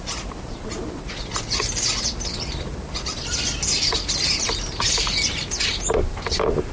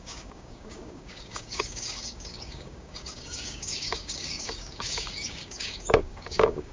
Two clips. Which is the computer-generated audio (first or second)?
second